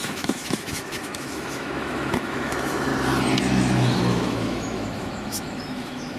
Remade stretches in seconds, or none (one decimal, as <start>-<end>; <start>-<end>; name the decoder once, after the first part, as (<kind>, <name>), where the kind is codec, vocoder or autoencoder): 0.0-2.9 (autoencoder, DAC-VAE); 3.4-6.2